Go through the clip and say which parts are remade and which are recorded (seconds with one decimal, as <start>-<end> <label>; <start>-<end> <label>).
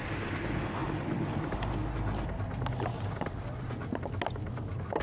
0.0-5.0 recorded